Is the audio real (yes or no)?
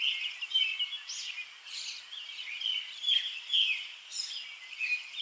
yes